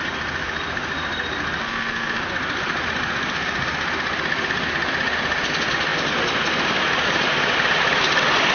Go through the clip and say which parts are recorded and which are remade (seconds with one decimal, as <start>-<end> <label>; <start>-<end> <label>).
0.0-1.6 recorded; 1.6-2.2 remade; 2.2-8.5 recorded